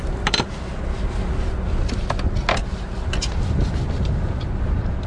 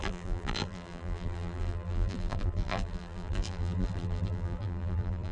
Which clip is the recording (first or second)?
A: first